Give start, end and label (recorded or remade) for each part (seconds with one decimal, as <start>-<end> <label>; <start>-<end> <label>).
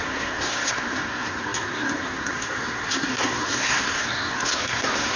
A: 0.0-5.2 remade